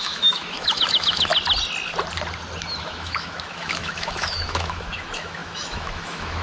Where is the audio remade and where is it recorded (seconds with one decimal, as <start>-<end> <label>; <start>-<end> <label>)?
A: 0.0-1.3 remade; 1.3-2.8 recorded; 2.8-6.4 remade